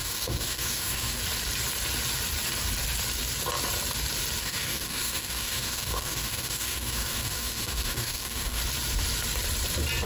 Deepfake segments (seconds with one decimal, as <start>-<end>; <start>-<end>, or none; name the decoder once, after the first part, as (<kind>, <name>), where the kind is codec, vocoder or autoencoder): 0.0-1.2 (codec, DAC); 4.4-8.6